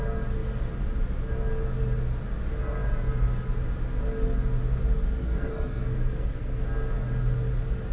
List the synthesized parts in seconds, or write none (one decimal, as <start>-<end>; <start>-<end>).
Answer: 5.2-6.6